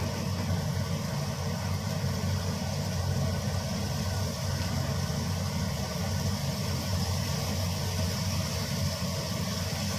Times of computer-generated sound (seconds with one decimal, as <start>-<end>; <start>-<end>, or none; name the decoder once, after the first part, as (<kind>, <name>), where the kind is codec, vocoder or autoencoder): none